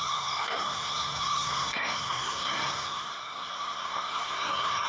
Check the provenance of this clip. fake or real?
fake